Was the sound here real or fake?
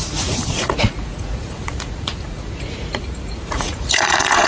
fake